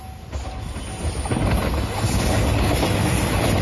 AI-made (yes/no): no